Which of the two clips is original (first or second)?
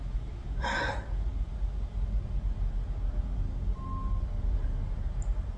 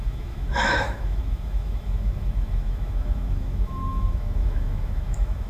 first